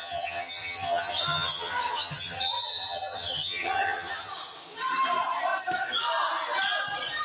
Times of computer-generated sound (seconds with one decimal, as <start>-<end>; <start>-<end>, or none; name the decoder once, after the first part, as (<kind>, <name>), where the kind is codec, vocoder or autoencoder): 0.0-4.3 (vocoder, HiFi-GAN)